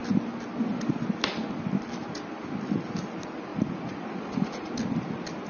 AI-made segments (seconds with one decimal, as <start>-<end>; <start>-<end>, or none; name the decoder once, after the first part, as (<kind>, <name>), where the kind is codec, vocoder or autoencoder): 3.5-4.7 (vocoder, Vocos)